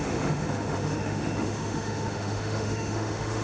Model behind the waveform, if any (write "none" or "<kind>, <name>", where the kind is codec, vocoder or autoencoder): autoencoder, DAC-VAE